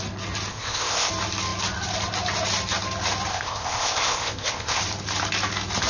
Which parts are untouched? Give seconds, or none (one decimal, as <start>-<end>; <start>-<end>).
0.0-0.5; 1.1-3.3; 4.8-5.9